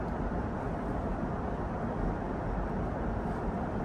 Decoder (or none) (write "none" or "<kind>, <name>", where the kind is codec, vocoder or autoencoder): vocoder, BigVGAN v2